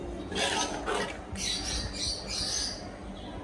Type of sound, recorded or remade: recorded